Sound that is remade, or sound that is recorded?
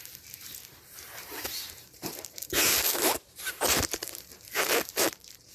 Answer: remade